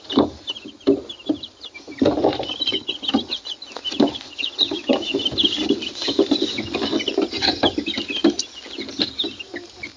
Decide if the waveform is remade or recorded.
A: recorded